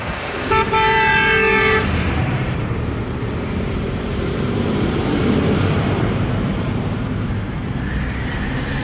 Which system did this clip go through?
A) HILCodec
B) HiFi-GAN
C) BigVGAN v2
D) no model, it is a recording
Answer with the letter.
C